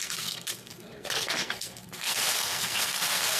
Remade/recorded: remade